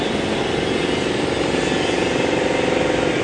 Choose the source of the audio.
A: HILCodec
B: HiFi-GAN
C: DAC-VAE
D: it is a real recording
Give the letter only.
D